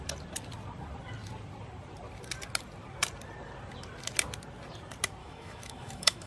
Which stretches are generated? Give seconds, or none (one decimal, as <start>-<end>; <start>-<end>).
5.2-6.3